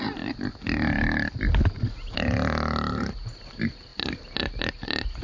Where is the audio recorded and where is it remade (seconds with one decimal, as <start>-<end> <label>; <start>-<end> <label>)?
0.0-5.2 recorded